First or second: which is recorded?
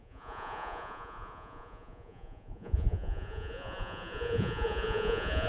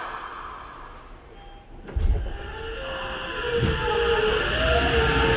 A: second